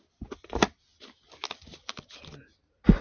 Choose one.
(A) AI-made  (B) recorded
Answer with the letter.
B